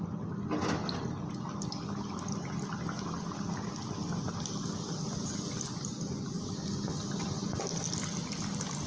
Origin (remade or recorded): recorded